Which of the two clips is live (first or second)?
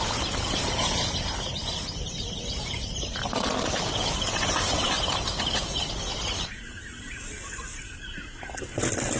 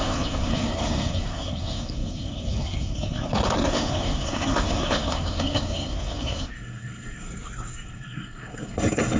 first